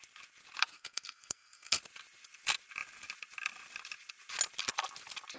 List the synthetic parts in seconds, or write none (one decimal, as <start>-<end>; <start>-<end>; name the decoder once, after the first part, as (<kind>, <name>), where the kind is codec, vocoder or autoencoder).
0.7-1.8 (codec, SNAC)